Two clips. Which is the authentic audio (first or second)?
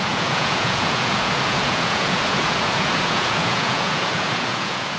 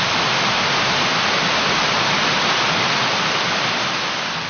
second